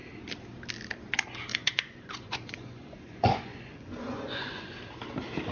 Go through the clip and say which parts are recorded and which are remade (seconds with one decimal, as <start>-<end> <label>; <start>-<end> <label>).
0.0-1.5 recorded; 1.5-4.8 remade; 4.8-5.5 recorded